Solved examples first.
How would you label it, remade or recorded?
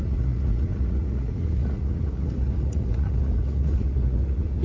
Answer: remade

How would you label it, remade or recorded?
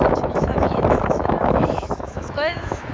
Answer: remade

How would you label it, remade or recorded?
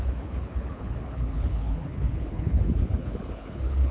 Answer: remade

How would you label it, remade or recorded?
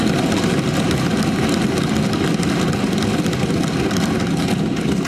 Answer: recorded